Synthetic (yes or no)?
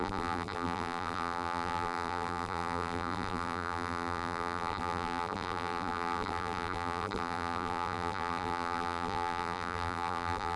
yes